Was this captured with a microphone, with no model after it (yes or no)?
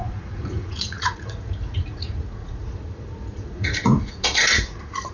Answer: no